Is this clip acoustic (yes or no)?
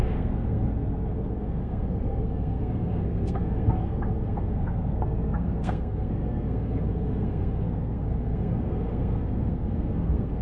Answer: no